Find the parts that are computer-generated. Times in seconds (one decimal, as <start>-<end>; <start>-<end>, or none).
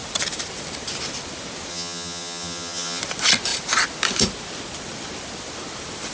1.7-3.0